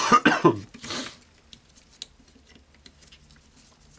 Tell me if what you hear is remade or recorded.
recorded